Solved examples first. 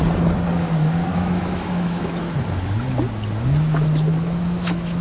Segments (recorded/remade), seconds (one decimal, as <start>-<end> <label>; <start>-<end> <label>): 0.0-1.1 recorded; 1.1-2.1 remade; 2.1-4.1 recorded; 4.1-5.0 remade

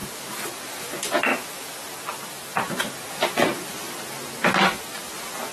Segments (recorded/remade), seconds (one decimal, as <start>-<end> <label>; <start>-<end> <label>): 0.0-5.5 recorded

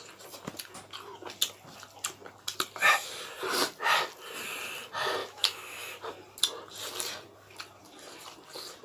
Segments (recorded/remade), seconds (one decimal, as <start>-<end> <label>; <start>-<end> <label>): 0.0-5.2 recorded; 5.2-5.9 remade; 5.9-8.8 recorded

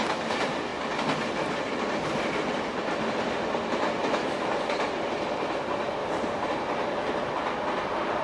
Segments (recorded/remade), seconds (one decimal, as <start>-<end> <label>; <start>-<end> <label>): 0.0-4.0 recorded; 4.0-4.5 remade; 4.5-8.2 recorded

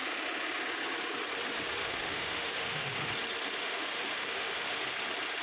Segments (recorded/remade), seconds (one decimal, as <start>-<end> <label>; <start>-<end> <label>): 0.0-1.8 recorded; 1.8-3.1 remade; 3.1-3.6 recorded; 3.6-4.8 remade; 4.8-5.4 recorded